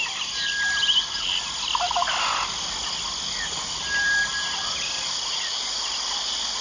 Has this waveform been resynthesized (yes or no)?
no